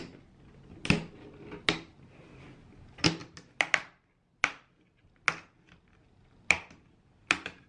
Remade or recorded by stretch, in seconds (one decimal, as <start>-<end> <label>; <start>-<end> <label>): 0.0-7.7 recorded